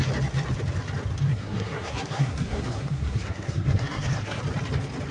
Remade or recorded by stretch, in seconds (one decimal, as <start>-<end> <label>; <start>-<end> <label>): 0.0-1.3 recorded; 1.3-4.4 remade; 4.4-5.1 recorded